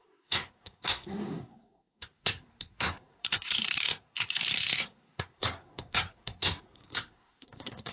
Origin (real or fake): fake